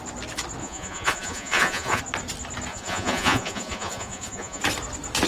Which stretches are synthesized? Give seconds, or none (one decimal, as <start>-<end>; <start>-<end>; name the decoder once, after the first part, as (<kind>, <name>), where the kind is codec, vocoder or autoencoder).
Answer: 0.6-2.0 (vocoder, Vocos); 2.7-4.6